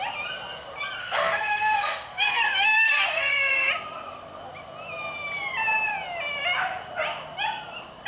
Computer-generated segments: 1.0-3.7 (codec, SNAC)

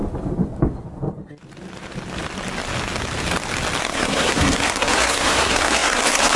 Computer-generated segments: 3.8-6.4 (codec, SNAC)

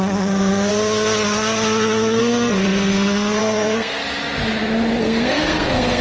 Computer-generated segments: 0.0-0.7 (codec, SNAC); 2.2-4.0; 5.0-6.0